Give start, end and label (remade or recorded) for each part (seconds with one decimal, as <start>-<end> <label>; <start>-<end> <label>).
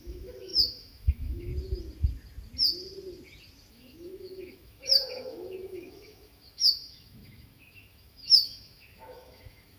0.0-1.5 remade; 1.5-3.7 recorded; 3.7-9.8 remade